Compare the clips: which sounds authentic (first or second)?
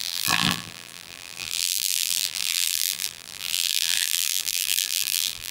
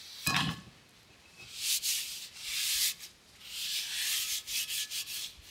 second